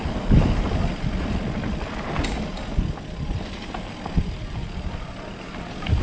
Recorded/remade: recorded